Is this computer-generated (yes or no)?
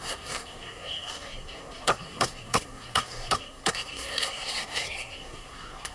yes